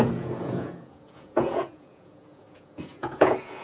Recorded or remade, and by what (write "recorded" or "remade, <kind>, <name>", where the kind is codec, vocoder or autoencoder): remade, vocoder, Vocos